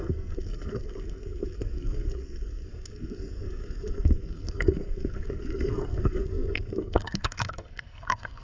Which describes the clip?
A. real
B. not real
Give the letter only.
B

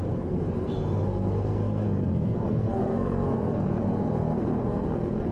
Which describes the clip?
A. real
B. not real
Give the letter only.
B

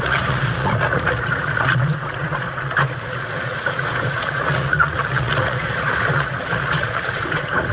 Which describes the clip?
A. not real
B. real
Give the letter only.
A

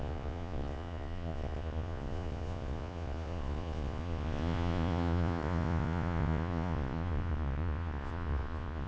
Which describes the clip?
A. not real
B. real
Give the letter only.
A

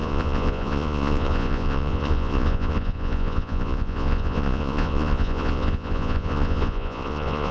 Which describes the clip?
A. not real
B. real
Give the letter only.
A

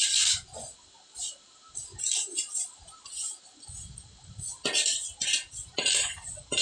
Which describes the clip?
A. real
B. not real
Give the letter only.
A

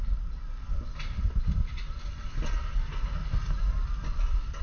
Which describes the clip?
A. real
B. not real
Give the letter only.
A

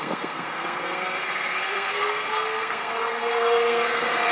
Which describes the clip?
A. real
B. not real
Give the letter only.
B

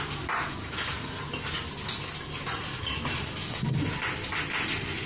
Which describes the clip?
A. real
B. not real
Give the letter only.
A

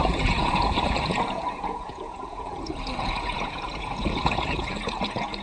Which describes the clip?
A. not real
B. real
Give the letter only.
A